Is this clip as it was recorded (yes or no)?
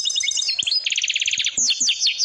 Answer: yes